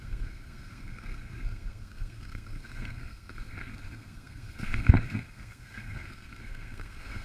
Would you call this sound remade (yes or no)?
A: yes